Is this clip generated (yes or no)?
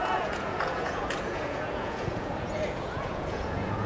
yes